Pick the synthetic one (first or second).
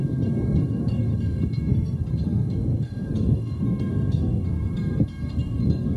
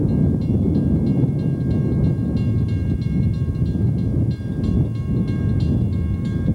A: first